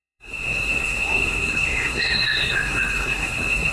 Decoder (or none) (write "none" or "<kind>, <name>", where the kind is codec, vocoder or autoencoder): codec, SNAC